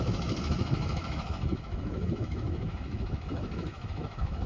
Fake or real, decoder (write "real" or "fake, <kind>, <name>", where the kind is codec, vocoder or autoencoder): fake, autoencoder, DAC-VAE